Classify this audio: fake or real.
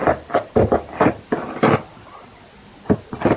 real